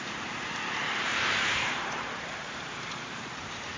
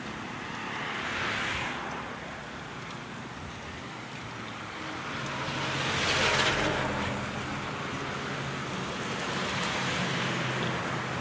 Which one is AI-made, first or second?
first